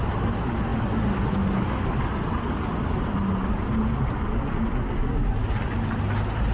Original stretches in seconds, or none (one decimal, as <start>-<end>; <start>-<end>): 0.0-6.5